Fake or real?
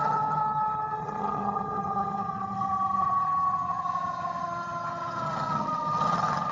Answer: fake